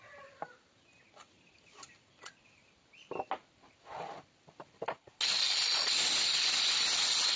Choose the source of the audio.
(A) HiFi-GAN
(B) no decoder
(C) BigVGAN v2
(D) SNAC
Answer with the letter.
B